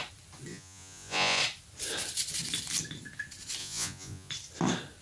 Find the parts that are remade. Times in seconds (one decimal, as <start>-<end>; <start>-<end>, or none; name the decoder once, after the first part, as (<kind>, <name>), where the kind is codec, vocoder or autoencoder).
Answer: 0.5-1.4 (vocoder, Vocos); 3.6-4.3